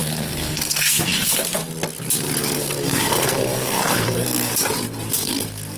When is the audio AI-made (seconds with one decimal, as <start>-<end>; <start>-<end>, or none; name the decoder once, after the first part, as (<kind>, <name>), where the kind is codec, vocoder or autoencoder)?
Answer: 0.0-1.6 (codec, SNAC); 2.6-4.5; 5.1-5.8